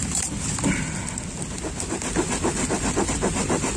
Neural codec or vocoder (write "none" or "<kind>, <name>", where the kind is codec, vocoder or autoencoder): none